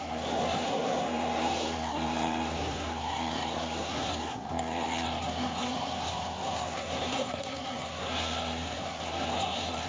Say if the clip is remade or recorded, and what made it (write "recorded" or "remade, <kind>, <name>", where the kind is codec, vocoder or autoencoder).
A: remade, codec, SNAC